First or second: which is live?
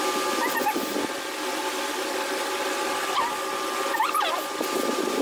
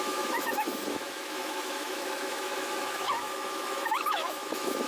first